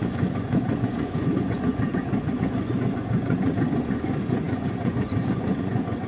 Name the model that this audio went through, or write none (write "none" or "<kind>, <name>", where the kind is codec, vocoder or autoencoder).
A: vocoder, Vocos